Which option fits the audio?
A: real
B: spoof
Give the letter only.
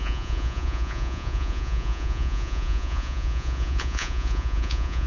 B